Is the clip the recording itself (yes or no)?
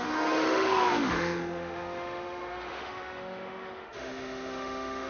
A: no